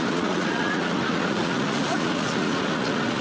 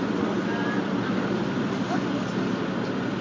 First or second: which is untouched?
second